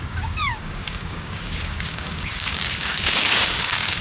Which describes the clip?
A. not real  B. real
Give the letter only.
A